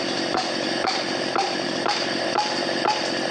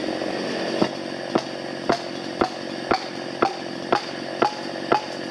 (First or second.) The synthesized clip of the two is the first